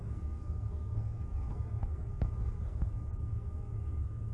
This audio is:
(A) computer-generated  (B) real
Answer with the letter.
A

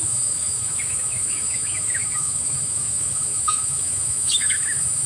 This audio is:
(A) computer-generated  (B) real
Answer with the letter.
A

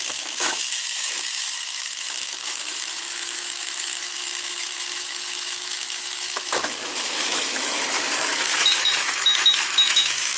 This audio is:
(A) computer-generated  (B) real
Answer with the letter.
A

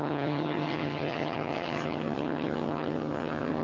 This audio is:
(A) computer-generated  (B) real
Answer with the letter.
A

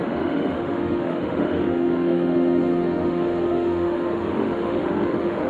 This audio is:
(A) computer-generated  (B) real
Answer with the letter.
A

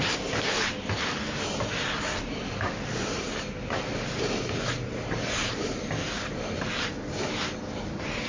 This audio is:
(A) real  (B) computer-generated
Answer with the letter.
B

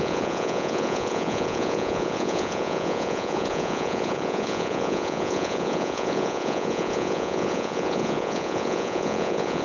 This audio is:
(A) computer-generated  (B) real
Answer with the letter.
A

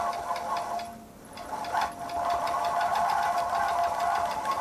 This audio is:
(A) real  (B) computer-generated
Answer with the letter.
A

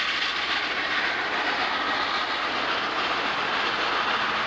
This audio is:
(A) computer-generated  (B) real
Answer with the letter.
B